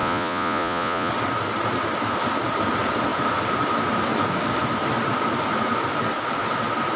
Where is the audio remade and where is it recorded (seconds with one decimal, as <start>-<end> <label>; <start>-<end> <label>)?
0.0-1.1 remade; 1.1-7.0 recorded